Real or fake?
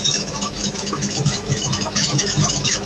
fake